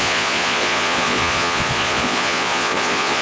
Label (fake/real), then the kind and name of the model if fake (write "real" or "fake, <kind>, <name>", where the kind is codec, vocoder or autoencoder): fake, vocoder, Vocos